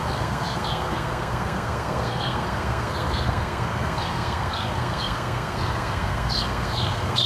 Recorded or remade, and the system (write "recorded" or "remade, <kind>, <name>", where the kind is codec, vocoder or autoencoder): remade, codec, SNAC